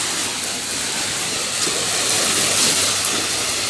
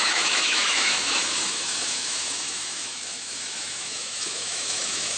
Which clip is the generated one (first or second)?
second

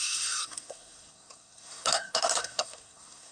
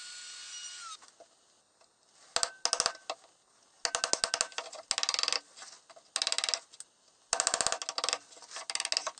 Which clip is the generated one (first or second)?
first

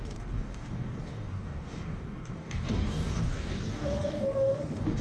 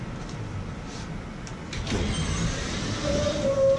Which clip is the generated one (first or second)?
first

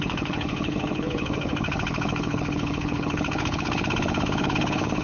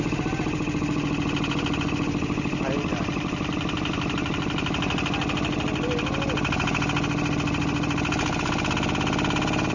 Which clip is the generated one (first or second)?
first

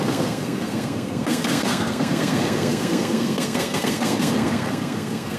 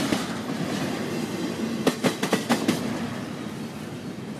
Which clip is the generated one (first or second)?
first